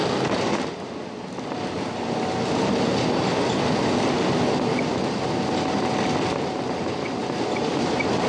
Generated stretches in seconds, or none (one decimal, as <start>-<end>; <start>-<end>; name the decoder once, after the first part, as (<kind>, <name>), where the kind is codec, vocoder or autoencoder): none